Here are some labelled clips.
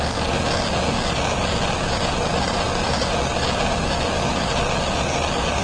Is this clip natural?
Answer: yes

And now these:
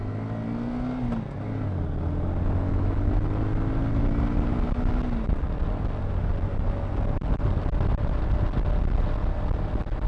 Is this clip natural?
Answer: yes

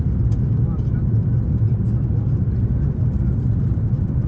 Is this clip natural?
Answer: yes